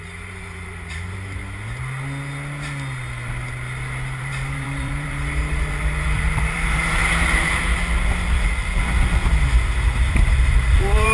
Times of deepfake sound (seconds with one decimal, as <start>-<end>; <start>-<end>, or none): 0.0-1.4; 4.2-7.0; 10.1-11.1